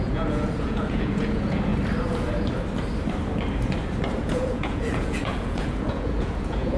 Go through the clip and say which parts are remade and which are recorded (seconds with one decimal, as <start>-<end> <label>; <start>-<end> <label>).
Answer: 0.0-1.7 remade; 1.7-4.2 recorded; 4.2-6.8 remade